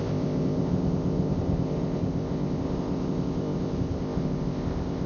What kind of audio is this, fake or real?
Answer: fake